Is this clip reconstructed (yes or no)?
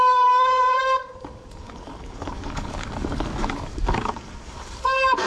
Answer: yes